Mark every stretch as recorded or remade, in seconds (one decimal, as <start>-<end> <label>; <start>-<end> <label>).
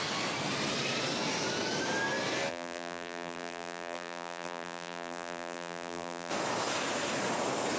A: 0.0-2.5 recorded; 2.5-6.3 remade; 6.3-7.8 recorded